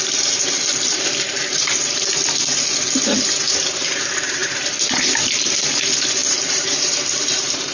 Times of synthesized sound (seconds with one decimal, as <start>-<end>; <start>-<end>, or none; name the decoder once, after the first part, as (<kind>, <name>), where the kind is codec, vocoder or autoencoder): 0.0-7.7 (vocoder, BigVGAN v2)